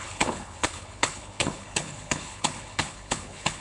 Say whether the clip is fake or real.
fake